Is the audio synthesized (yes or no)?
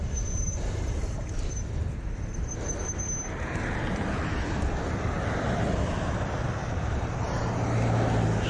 no